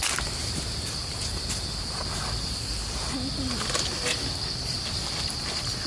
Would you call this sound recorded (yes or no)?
yes